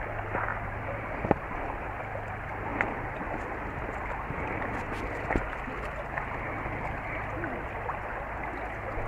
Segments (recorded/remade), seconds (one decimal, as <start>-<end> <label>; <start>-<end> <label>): 0.0-0.5 recorded; 0.5-2.0 remade; 2.0-9.1 recorded

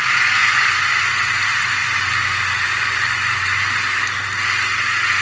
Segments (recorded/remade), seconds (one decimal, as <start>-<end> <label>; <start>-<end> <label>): 0.0-0.4 recorded; 0.4-1.3 remade; 1.3-1.8 recorded; 1.8-3.6 remade; 3.6-5.2 recorded

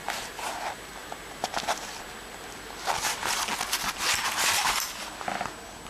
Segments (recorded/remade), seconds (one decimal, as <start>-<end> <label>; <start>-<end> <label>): 0.0-0.5 remade; 0.5-5.9 recorded

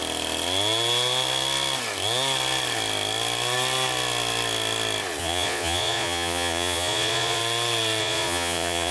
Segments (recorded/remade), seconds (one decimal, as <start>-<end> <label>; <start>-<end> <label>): 0.0-5.2 recorded; 5.2-7.4 remade; 7.4-8.0 recorded; 8.0-8.9 remade

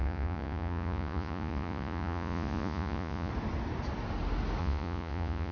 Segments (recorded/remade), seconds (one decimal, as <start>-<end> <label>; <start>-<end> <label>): 0.0-3.3 remade; 3.3-4.6 recorded; 4.6-5.5 remade

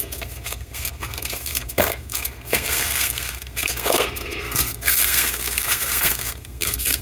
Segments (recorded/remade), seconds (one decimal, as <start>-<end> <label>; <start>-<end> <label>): 0.0-7.0 remade